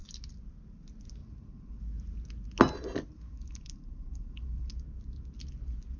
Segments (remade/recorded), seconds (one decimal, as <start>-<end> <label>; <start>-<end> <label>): 0.0-1.2 recorded; 1.2-1.8 remade; 1.8-3.1 recorded; 3.1-4.7 remade; 4.7-6.0 recorded